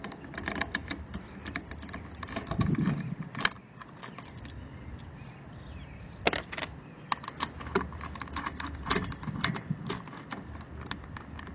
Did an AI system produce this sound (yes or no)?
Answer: no